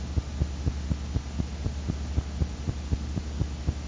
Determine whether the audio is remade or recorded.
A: recorded